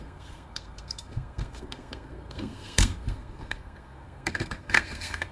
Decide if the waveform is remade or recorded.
remade